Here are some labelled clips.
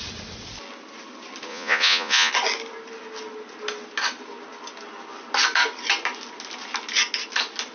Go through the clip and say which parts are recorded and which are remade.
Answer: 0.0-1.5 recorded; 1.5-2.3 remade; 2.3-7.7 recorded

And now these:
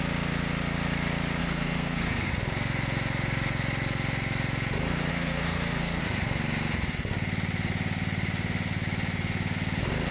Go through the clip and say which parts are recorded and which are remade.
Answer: 0.0-1.4 recorded; 1.4-2.3 remade; 2.3-5.1 recorded; 5.1-6.0 remade; 6.0-10.1 recorded